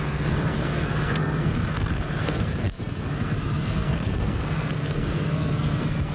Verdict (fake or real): fake